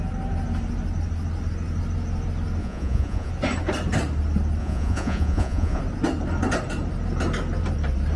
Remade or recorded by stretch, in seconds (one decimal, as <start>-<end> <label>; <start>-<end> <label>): 0.0-2.6 recorded; 2.6-3.3 remade; 3.3-4.6 recorded; 4.6-5.8 remade; 5.8-8.2 recorded